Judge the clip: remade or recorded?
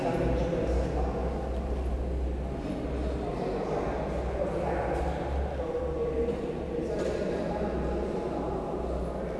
recorded